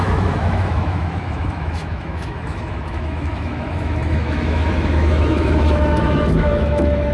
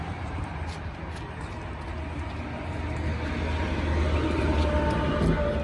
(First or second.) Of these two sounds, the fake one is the first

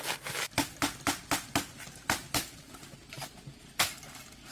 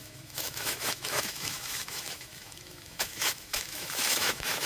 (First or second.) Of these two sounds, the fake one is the second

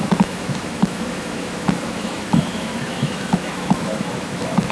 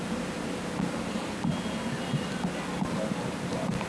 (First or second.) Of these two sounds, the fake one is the first